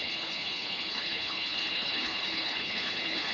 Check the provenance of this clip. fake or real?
fake